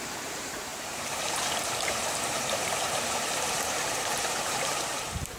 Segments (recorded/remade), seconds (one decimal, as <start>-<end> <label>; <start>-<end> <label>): 0.0-5.4 remade